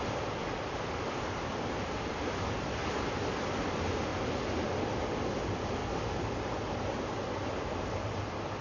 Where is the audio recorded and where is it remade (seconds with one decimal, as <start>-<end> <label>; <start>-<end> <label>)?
0.0-8.6 recorded